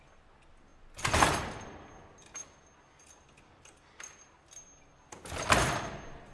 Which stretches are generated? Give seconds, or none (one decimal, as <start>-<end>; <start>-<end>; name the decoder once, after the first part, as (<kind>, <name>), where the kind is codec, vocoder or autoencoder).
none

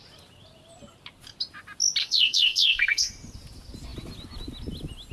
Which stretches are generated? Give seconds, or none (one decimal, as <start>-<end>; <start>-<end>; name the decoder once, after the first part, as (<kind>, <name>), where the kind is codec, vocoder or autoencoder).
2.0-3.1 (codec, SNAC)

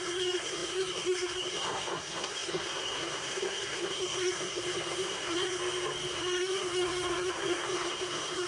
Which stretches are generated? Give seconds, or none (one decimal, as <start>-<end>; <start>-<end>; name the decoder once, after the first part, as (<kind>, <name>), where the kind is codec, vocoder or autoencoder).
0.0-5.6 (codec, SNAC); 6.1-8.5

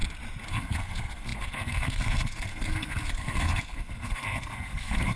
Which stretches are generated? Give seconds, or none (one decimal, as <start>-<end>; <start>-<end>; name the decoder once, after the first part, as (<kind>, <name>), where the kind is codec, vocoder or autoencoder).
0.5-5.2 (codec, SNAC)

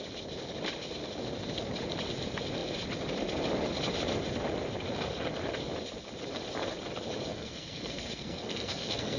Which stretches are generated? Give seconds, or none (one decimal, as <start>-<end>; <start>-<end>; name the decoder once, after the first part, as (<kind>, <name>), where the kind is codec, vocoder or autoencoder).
7.3-9.2 (codec, SNAC)